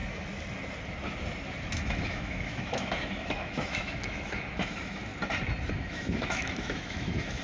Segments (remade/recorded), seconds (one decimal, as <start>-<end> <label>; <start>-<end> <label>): 0.0-1.7 recorded; 1.7-5.1 remade; 5.1-5.7 recorded; 5.7-7.4 remade

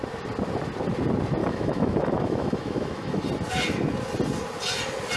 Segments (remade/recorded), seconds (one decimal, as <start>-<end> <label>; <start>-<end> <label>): 0.0-1.4 recorded; 1.4-3.2 remade; 3.2-5.2 recorded

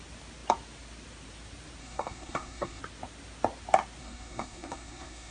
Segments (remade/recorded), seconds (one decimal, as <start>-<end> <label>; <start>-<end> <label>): 0.0-1.8 recorded; 1.8-2.8 remade; 2.8-4.0 recorded; 4.0-5.3 remade

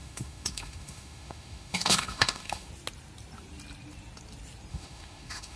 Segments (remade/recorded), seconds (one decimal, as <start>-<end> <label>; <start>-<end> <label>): 0.0-2.7 remade; 2.7-4.7 recorded; 4.7-5.6 remade

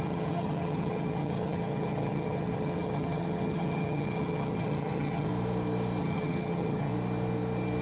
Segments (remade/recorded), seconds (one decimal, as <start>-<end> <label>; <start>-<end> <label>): 0.0-5.3 remade; 5.3-6.0 recorded; 6.0-6.9 remade; 6.9-7.8 recorded